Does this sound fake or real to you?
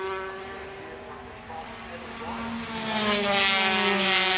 real